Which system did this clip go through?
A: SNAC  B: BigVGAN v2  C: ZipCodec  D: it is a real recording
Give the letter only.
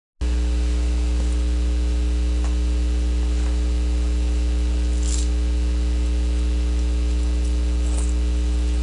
D